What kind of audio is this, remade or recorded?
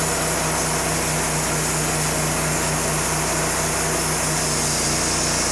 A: recorded